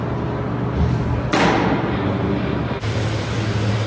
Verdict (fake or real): real